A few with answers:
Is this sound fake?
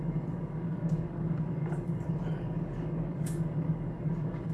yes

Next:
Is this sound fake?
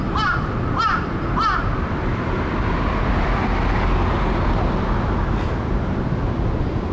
no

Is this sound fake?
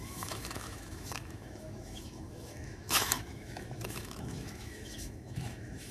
yes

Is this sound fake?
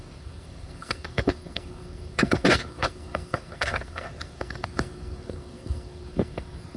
yes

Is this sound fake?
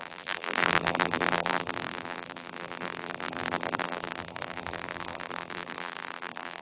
yes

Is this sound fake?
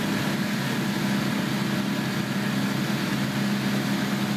no